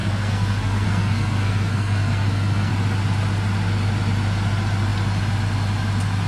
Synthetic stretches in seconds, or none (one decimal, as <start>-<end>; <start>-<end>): 0.0-2.7